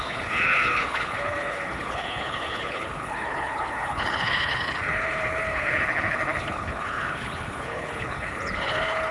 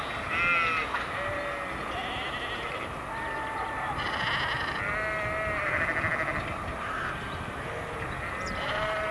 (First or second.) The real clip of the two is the second